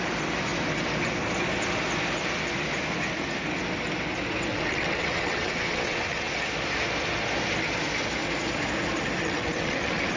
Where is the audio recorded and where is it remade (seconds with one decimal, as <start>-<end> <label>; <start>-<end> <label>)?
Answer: 0.0-4.5 recorded; 4.5-6.3 remade; 6.3-9.2 recorded; 9.2-10.2 remade